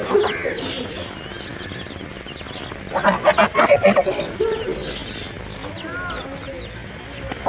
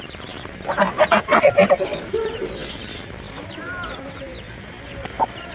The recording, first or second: first